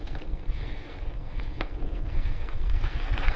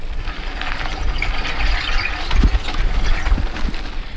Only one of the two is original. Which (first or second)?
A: second